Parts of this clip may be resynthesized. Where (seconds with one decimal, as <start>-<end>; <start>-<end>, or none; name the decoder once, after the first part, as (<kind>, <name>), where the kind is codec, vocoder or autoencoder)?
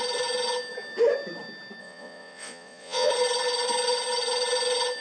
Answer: 1.8-3.1 (vocoder, Vocos)